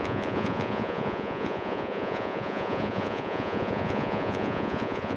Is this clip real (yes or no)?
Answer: no